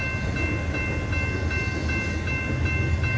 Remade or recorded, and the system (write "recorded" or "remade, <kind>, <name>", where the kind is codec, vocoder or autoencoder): recorded